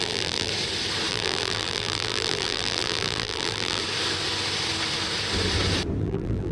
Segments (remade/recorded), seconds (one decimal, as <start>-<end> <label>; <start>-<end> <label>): 0.0-0.5 remade; 0.5-1.1 recorded; 1.1-3.8 remade; 3.8-6.0 recorded; 6.0-6.5 remade